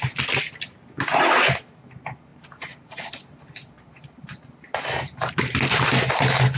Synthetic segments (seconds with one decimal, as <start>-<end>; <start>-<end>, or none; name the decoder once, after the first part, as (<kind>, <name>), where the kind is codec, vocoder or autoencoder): none